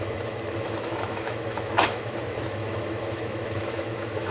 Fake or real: fake